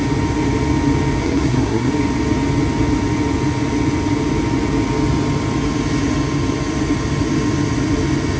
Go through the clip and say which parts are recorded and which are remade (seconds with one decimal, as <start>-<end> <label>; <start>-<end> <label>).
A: 0.0-1.2 recorded; 1.2-1.9 remade; 1.9-8.4 recorded